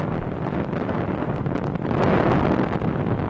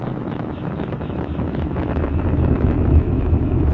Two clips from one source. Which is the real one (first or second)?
first